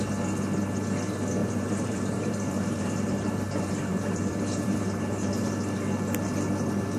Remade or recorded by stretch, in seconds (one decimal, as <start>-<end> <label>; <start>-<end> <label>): 0.0-1.4 recorded; 1.4-5.3 remade; 5.3-7.0 recorded